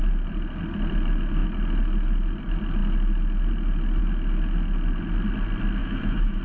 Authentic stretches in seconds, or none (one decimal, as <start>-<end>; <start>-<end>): 0.0-5.8